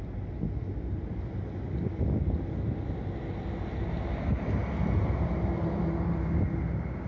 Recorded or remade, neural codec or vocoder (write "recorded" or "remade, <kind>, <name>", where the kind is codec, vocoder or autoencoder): recorded